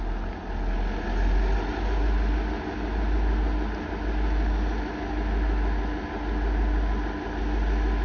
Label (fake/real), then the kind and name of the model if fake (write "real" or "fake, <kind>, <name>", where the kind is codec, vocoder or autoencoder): real